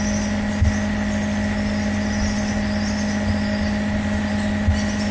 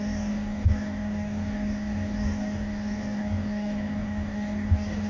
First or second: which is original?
first